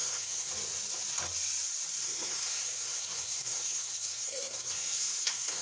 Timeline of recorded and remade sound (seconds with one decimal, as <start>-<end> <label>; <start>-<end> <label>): 0.0-0.5 remade; 0.5-2.0 recorded; 2.0-5.6 remade